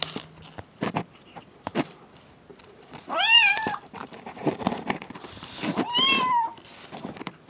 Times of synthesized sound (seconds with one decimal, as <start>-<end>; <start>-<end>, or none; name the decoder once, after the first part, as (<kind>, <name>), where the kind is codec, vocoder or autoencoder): 2.5-6.3 (vocoder, BigVGAN v2)